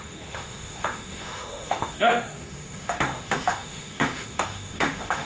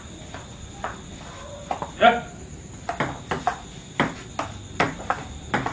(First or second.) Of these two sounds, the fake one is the first